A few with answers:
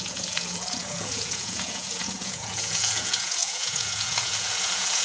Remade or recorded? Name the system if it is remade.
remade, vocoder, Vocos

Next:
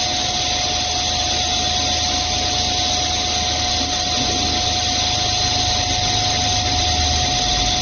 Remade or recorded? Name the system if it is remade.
recorded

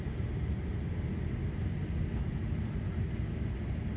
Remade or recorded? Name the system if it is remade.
recorded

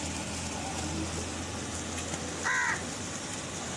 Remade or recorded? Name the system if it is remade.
recorded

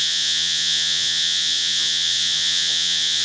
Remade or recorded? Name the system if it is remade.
remade, vocoder, Vocos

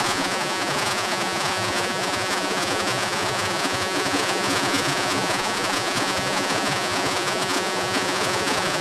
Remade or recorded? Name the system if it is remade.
remade, vocoder, Vocos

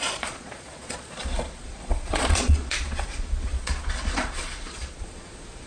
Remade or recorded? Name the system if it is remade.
remade, vocoder, Vocos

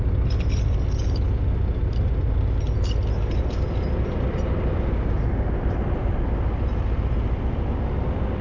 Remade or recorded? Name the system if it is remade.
recorded